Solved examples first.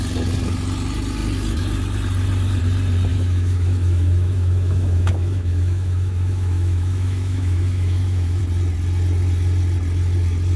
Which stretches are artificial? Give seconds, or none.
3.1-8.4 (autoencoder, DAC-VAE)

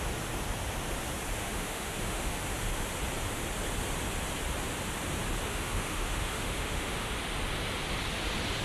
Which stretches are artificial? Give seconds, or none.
1.4-2.4 (autoencoder, DAC-VAE); 5.5-7.1

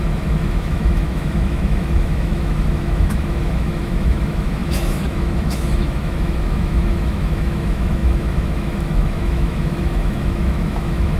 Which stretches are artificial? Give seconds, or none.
0.0-11.2 (autoencoder, DAC-VAE)